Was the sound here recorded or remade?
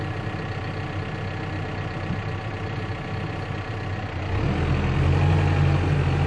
recorded